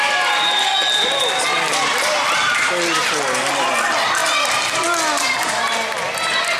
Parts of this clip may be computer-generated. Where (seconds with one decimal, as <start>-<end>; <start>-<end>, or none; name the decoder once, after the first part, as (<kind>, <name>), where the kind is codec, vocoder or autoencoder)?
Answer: none